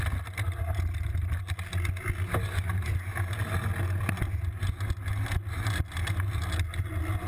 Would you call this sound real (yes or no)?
yes